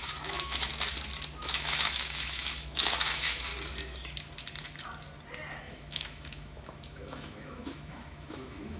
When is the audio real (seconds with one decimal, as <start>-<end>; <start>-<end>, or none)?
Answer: 0.7-1.4; 3.5-5.6